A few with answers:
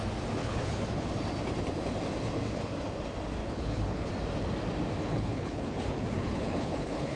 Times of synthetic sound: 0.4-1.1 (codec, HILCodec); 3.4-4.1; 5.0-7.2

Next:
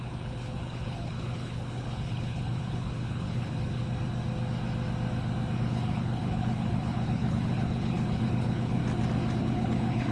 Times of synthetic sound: 0.0-3.8 (codec, HILCodec); 5.6-8.8; 9.4-10.1

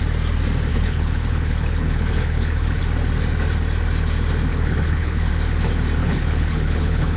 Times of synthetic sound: 0.7-2.8 (codec, HILCodec); 4.5-5.3; 6.0-7.2

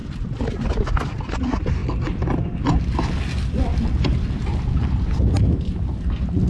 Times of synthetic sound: none

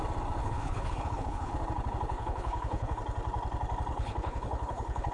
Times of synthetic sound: 0.4-1.5 (codec, HILCodec); 2.1-3.0; 3.9-5.1